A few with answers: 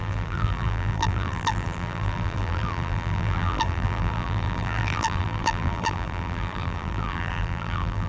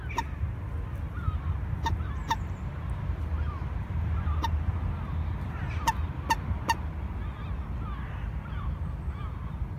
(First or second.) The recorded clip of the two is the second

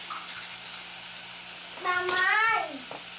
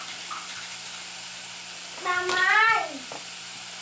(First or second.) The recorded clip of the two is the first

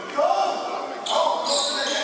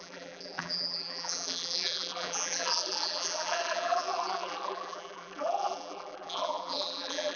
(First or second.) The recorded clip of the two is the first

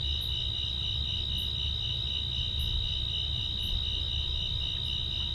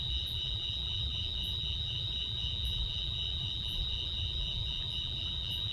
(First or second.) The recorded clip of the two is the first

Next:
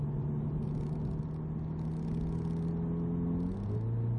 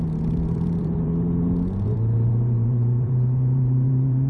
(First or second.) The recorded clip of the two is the first